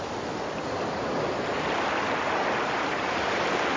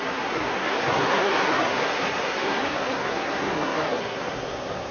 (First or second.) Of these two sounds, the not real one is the second